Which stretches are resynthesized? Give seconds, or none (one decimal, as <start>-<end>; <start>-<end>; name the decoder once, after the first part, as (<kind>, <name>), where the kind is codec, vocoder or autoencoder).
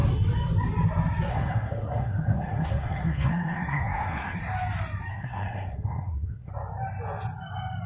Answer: 1.3-4.4 (codec, SNAC); 5.1-6.5